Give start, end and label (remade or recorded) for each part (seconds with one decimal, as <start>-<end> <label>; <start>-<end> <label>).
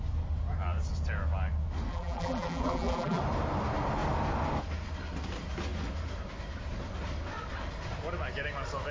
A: 0.0-1.9 recorded; 1.9-3.2 remade; 3.2-8.9 recorded